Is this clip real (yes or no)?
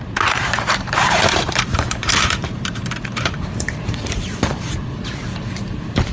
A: no